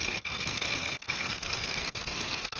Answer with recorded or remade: remade